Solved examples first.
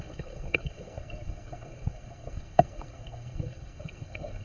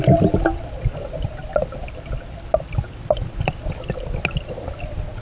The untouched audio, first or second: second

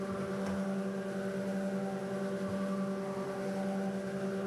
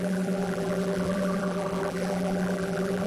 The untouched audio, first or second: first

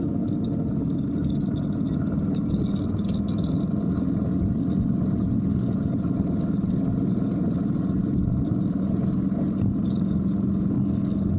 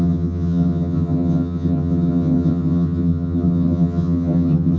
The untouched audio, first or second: first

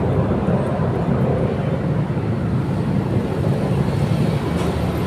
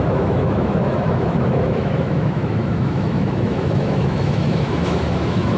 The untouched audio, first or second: first